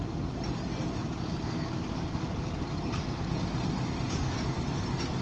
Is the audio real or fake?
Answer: real